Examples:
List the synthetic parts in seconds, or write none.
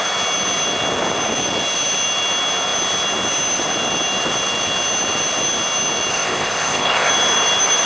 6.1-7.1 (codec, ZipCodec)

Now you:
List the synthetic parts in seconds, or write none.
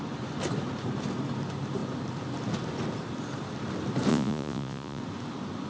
4.1-5.0 (vocoder, Vocos)